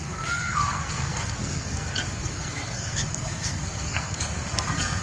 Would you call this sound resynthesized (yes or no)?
yes